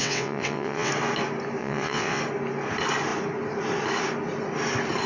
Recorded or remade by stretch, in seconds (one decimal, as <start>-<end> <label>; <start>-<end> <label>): 0.0-0.9 remade; 0.9-1.6 recorded; 1.6-2.2 remade; 2.2-5.1 recorded